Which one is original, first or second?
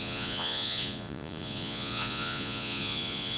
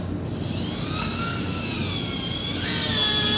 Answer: second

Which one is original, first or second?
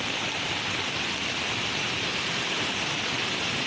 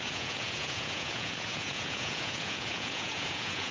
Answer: first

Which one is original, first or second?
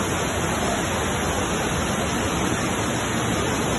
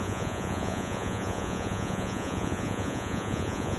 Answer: first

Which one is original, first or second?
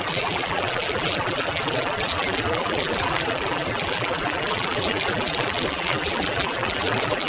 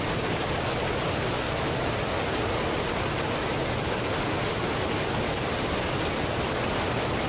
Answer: second